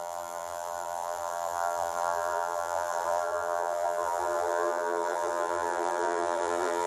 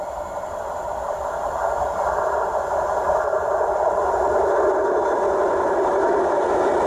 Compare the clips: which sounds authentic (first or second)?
second